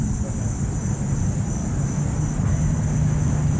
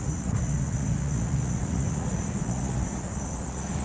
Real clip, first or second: first